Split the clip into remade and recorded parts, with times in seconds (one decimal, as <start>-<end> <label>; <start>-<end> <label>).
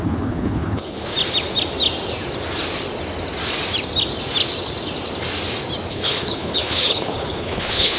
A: 0.0-1.1 remade; 1.1-5.9 recorded; 5.9-8.0 remade